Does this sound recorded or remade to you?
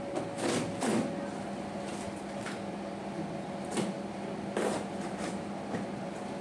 recorded